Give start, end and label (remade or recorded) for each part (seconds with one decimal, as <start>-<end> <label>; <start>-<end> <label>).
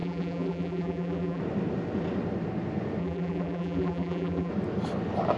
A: 0.0-1.4 remade; 1.4-3.0 recorded; 3.0-4.5 remade; 4.5-5.4 recorded